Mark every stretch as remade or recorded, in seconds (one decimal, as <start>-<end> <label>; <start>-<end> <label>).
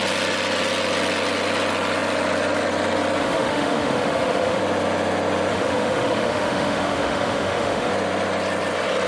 0.0-3.2 recorded; 3.2-4.6 remade; 4.6-5.5 recorded; 5.5-7.9 remade; 7.9-9.1 recorded